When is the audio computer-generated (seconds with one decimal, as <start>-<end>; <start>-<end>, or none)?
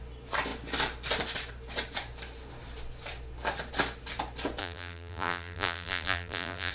4.6-6.7